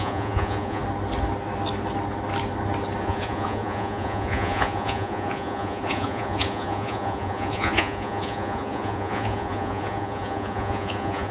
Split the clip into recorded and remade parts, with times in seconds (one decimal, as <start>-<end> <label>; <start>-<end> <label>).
0.0-0.8 remade; 0.8-3.0 recorded; 3.0-11.3 remade